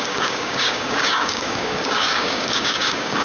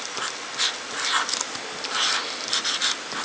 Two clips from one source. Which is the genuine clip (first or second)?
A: second